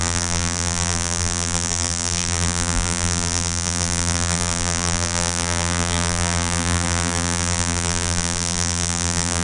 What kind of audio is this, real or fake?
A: fake